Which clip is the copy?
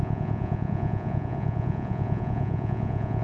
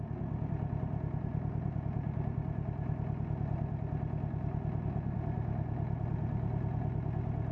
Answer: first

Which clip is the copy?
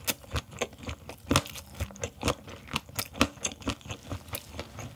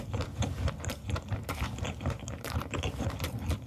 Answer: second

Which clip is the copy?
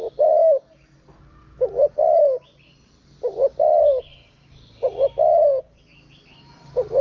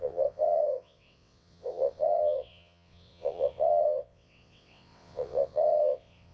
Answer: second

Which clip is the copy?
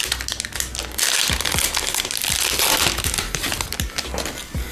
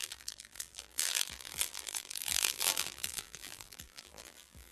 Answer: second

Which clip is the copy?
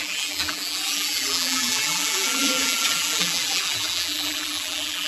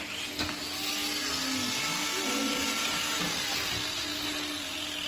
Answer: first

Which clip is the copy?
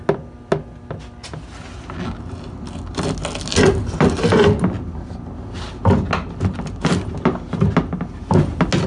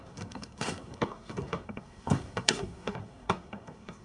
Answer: second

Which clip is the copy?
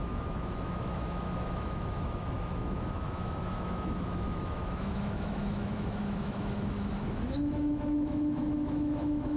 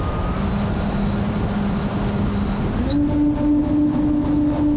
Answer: first